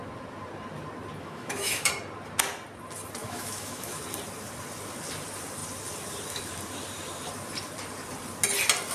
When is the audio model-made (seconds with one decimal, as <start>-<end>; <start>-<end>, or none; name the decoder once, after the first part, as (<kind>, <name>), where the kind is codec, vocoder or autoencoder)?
1.2-1.9 (autoencoder, DAC-VAE); 3.2-4.0